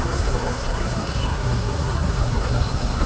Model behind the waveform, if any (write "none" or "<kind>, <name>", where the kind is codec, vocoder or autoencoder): codec, SNAC